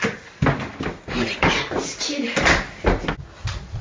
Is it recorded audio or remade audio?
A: recorded